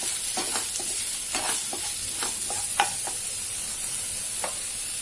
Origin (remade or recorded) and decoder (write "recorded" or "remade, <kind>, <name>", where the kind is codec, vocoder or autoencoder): recorded